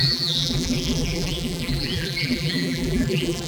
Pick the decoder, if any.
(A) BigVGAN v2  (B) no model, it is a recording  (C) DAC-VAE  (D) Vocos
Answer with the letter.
A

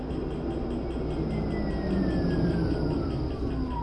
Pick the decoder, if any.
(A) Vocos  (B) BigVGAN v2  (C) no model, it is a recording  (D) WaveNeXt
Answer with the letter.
C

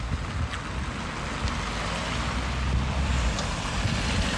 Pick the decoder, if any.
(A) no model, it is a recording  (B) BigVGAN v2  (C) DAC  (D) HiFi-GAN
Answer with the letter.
A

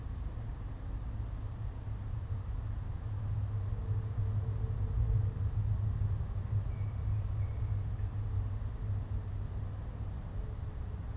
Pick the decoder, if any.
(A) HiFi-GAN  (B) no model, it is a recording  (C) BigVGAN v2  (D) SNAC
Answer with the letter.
B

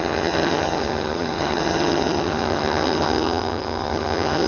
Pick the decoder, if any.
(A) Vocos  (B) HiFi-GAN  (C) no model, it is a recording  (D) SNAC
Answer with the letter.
B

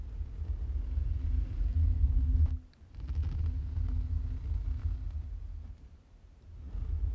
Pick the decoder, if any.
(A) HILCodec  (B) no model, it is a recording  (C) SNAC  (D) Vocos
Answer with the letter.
B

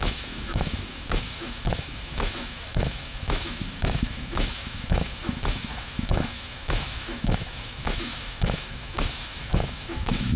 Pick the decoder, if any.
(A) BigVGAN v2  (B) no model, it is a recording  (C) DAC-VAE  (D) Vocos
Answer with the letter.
C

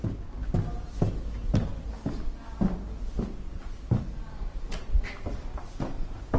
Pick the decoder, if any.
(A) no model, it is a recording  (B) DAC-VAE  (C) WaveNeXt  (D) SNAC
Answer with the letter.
A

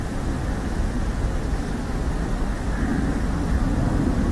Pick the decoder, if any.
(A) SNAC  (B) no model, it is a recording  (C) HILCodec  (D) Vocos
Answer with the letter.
B